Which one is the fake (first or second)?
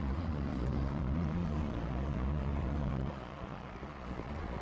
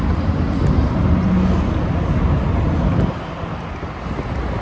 first